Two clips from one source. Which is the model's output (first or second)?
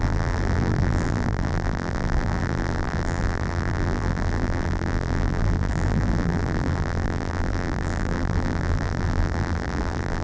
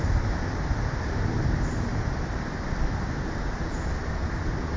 first